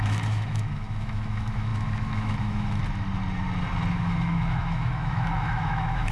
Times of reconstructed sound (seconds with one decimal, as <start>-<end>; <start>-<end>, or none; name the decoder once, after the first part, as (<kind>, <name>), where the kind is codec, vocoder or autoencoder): 0.0-2.8 (autoencoder, DAC-VAE); 3.9-6.1